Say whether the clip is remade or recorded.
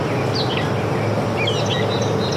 recorded